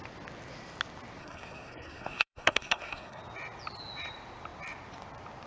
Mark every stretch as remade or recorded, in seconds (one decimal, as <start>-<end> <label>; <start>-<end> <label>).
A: 0.0-1.2 recorded; 1.2-3.2 remade; 3.2-5.5 recorded